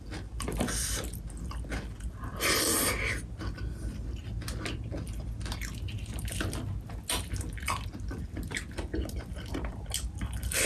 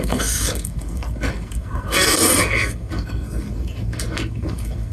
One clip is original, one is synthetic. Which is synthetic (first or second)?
second